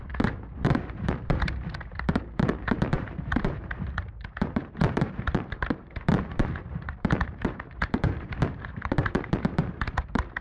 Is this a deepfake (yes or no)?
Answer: yes